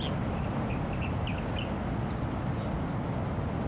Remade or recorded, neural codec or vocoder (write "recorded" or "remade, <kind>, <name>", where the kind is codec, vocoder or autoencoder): recorded